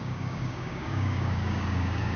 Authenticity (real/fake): fake